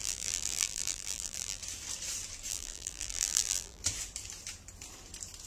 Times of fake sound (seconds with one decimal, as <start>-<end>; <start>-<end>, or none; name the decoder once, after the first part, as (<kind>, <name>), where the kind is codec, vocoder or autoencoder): 0.0-1.6 (vocoder, BigVGAN v2); 2.5-3.8